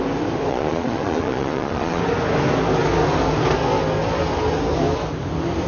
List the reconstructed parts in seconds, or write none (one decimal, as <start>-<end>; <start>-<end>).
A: 0.5-2.0